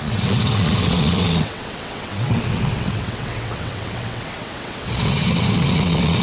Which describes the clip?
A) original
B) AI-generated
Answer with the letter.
B